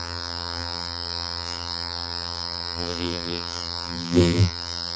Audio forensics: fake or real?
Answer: fake